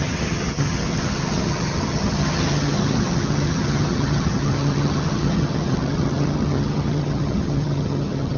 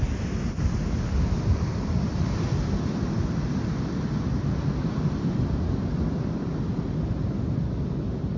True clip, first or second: second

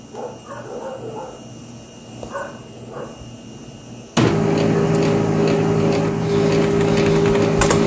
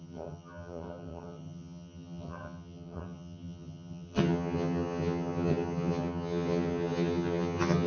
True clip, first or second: first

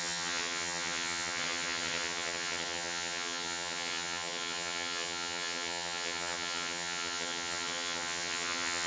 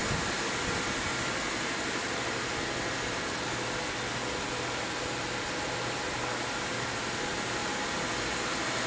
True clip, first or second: second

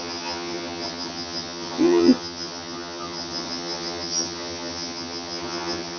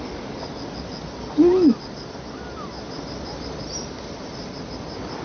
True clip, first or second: second